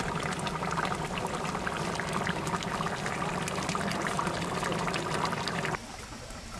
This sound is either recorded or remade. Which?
remade